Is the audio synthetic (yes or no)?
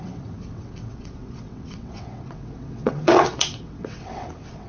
yes